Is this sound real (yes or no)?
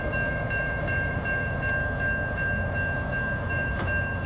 no